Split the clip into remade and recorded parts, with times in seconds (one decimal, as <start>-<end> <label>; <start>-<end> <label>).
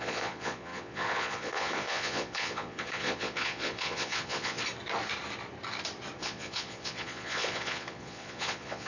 0.0-4.6 remade; 4.6-6.2 recorded; 6.2-8.9 remade